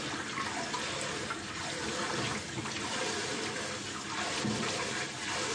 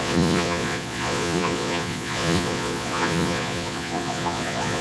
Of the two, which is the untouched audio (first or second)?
first